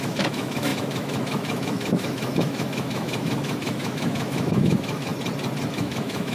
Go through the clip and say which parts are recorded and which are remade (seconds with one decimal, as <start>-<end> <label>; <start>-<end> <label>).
0.0-5.1 remade; 5.1-5.7 recorded; 5.7-6.3 remade